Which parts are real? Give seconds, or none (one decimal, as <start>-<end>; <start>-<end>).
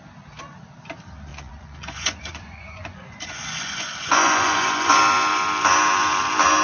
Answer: 0.0-1.3; 5.0-6.6